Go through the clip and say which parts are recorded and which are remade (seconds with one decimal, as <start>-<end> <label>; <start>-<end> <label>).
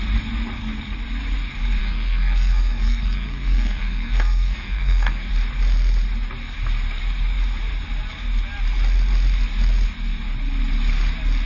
0.0-1.8 recorded; 1.8-5.3 remade; 5.3-11.5 recorded